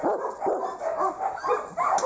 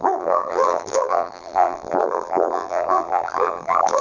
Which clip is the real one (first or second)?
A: first